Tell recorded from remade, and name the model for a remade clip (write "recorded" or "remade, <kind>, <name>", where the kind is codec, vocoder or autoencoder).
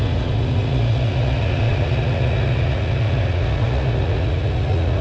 remade, vocoder, Vocos